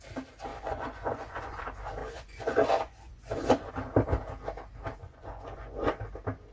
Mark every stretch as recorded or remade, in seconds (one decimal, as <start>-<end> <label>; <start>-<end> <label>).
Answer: 0.0-0.5 recorded; 0.5-1.6 remade; 1.6-2.0 recorded; 2.0-3.7 remade; 3.7-5.0 recorded; 5.0-5.9 remade; 5.9-6.5 recorded